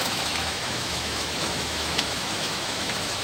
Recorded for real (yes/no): no